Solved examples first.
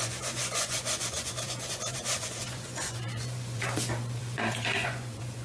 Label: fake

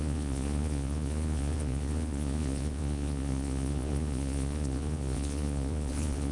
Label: fake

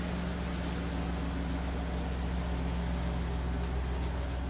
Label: real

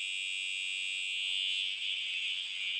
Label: real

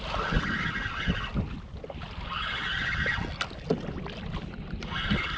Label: real